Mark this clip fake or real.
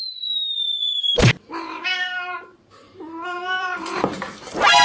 fake